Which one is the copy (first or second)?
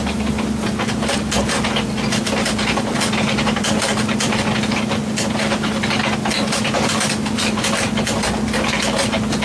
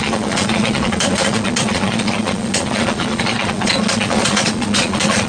second